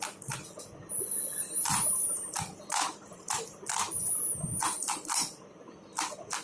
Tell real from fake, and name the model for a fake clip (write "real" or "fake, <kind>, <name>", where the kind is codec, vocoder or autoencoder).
real